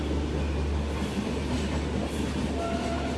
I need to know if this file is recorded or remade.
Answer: recorded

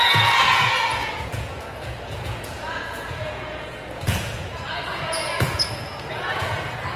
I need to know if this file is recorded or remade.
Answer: remade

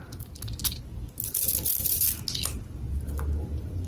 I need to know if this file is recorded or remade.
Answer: recorded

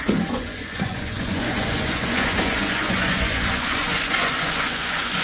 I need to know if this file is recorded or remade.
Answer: remade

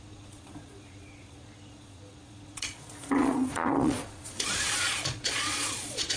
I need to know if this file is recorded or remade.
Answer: remade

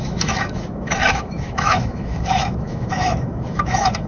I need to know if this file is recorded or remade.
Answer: remade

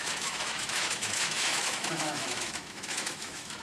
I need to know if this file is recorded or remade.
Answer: remade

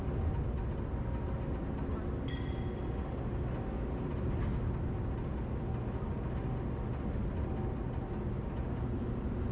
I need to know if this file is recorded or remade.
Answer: recorded